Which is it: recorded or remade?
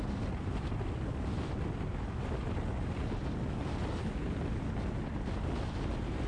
recorded